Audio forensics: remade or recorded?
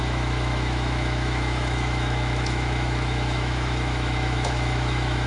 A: remade